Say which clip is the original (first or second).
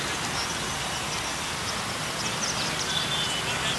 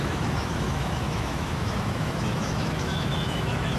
first